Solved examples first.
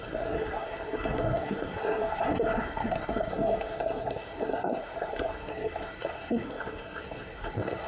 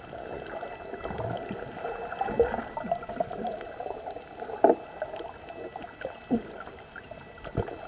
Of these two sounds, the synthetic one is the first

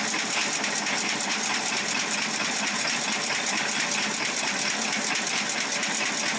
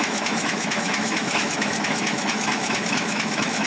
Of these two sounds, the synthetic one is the second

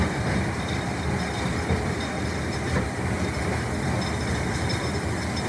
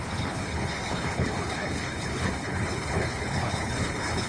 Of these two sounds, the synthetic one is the second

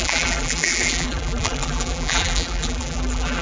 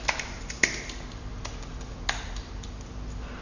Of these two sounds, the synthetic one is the first